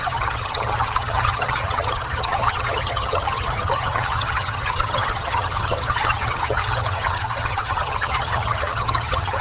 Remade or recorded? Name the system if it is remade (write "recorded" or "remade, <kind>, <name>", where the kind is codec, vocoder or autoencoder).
remade, vocoder, HiFi-GAN